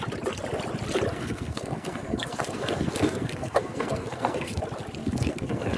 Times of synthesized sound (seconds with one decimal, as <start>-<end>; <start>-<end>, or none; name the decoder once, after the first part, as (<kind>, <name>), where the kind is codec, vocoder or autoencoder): 1.1-4.6 (codec, SNAC); 5.0-5.8